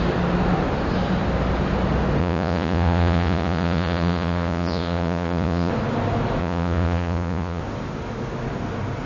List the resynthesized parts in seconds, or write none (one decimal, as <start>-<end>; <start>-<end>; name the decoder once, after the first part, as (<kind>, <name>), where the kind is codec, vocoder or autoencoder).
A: 2.2-5.7 (vocoder, Vocos); 6.4-7.6